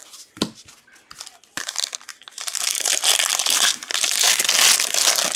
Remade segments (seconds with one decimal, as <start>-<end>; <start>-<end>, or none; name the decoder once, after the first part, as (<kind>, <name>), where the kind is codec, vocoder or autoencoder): 2.1-2.9 (vocoder, BigVGAN v2); 3.3-4.4